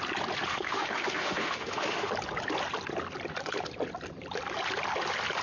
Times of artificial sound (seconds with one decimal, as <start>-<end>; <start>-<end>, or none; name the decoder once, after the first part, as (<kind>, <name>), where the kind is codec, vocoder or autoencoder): 0.5-2.1 (autoencoder, DAC-VAE)